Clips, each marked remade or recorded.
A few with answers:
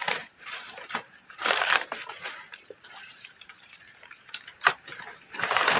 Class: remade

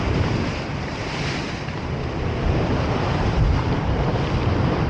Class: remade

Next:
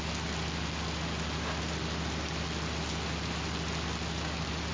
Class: recorded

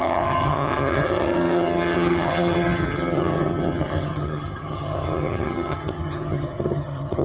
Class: remade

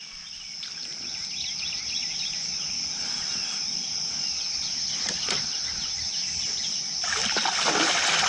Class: remade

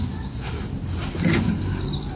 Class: recorded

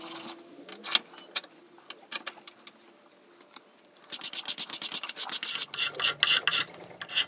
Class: recorded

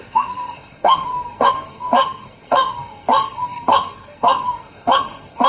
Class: remade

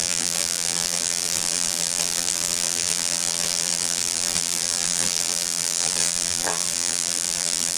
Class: remade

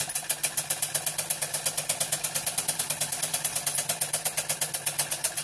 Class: recorded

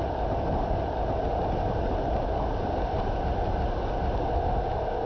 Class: recorded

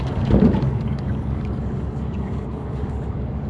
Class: remade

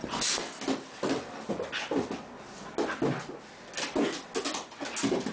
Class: recorded